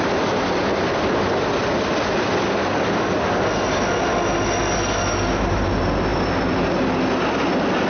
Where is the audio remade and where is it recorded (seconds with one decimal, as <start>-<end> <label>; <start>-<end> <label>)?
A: 0.0-7.9 recorded